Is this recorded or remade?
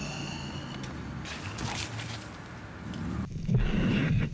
recorded